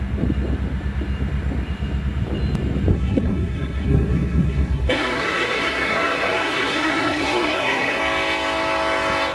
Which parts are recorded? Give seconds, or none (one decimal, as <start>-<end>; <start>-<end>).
0.0-2.9; 8.0-9.3